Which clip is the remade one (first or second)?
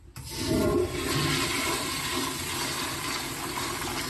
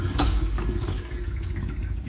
second